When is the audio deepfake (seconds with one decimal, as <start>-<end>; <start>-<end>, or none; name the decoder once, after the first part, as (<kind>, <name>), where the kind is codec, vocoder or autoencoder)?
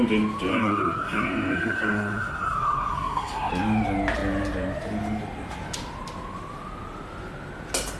0.5-3.5 (codec, SNAC)